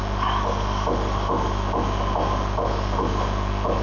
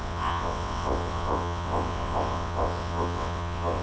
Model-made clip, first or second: second